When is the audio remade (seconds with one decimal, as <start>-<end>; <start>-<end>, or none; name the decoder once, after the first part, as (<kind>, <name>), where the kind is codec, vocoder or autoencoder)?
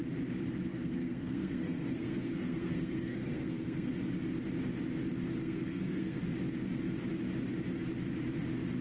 0.7-3.9 (codec, SNAC); 5.4-6.2